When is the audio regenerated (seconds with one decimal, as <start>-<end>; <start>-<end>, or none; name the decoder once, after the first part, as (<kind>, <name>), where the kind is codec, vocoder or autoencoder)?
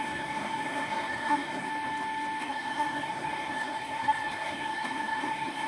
0.0-1.7 (codec, SNAC); 2.4-5.7